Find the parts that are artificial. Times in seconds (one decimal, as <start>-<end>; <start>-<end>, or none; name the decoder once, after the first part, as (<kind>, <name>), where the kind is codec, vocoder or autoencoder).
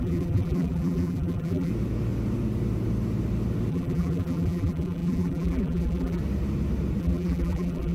0.0-1.7 (vocoder, BigVGAN v2); 3.7-6.2; 7.0-7.9